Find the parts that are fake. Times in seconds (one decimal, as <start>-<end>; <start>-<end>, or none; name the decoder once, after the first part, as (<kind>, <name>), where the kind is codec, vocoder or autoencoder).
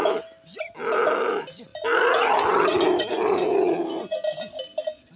1.2-1.7 (vocoder, BigVGAN v2); 4.8-5.2